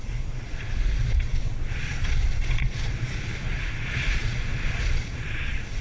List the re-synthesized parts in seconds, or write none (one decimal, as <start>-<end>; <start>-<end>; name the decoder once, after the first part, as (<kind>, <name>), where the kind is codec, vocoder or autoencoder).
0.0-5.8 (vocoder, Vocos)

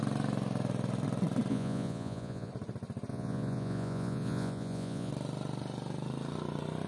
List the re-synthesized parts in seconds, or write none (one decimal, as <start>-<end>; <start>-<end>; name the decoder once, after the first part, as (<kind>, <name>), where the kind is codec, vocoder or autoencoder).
1.5-2.5 (vocoder, Vocos); 3.1-5.1

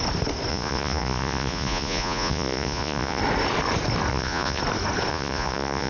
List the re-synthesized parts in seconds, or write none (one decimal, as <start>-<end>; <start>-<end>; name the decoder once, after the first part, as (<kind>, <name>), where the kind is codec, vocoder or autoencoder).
0.5-3.2 (vocoder, Vocos); 4.1-4.6; 5.1-5.9